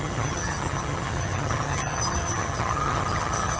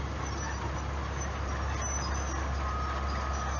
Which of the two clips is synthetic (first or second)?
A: first